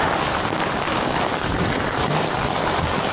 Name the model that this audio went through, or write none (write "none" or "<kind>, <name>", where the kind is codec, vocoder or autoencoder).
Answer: vocoder, BigVGAN v2